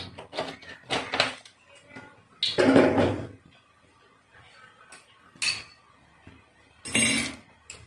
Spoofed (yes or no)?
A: no